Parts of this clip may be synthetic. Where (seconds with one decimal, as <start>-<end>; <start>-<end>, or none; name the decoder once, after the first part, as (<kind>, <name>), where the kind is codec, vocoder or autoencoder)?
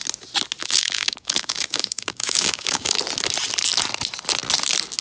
0.6-3.0 (codec, DAC)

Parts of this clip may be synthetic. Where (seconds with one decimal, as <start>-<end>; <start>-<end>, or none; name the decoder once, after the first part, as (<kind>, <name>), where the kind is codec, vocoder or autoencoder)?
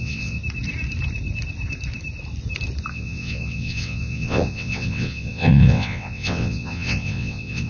0.0-0.4 (vocoder, WaveNeXt); 2.9-7.7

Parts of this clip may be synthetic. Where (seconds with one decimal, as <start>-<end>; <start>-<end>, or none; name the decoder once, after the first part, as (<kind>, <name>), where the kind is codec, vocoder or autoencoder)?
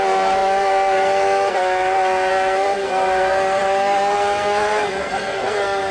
0.0-5.9 (codec, SNAC)